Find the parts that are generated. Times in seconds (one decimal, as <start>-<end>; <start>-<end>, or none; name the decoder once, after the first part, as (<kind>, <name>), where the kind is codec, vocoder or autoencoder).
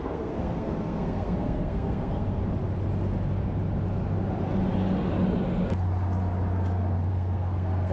0.0-2.4 (codec, SNAC); 7.1-7.9